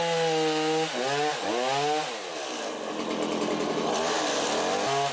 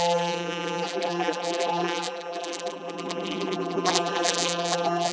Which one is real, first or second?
first